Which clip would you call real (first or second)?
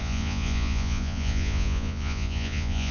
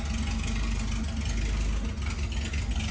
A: second